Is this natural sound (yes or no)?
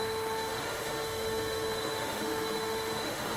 no